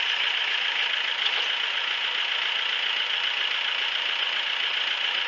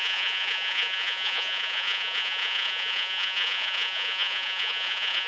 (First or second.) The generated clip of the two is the second